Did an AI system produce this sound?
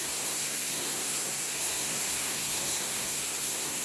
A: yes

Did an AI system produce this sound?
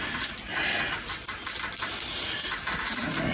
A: no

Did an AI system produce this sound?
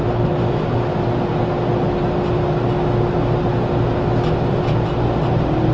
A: no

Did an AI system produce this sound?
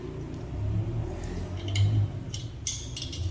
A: no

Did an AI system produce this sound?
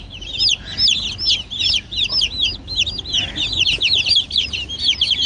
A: no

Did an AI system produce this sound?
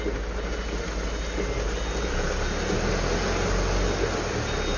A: no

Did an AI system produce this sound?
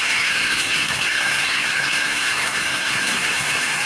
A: yes